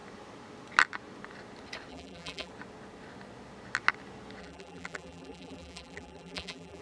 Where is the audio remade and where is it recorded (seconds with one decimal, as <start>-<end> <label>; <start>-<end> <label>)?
0.0-1.9 recorded; 1.9-2.5 remade; 2.5-4.4 recorded; 4.4-6.8 remade